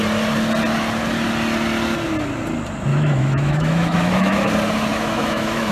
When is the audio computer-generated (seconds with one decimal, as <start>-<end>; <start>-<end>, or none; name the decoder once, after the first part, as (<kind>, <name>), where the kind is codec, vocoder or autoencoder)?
2.9-4.5 (autoencoder, DAC-VAE); 4.9-5.7